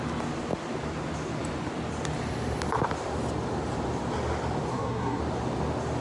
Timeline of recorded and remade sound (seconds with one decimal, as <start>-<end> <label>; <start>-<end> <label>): 0.0-4.7 recorded; 4.7-5.2 remade; 5.2-6.0 recorded